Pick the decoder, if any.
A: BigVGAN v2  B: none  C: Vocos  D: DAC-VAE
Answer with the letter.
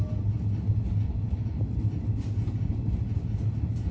B